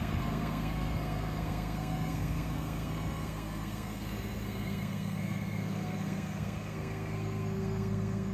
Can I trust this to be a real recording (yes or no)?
no